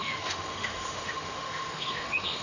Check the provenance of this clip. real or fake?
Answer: fake